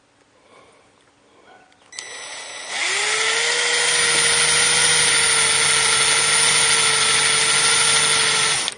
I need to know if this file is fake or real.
real